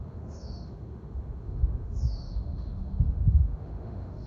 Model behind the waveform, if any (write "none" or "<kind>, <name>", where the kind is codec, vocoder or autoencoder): autoencoder, DAC-VAE